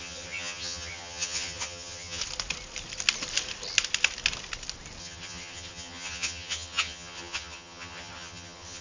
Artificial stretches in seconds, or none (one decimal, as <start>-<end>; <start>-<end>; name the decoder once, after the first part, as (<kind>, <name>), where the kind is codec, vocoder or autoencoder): 0.0-2.2 (vocoder, HiFi-GAN); 5.0-8.8